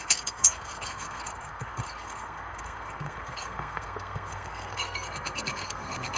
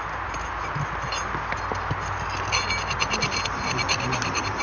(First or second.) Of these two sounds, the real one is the second